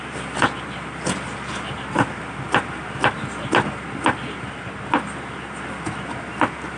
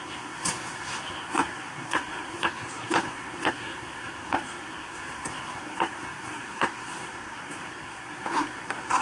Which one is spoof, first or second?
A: second